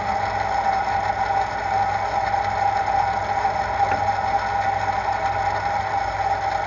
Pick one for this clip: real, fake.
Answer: real